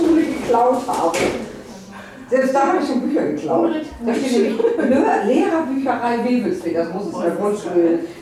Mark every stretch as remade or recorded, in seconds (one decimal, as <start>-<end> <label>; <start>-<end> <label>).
0.0-8.2 recorded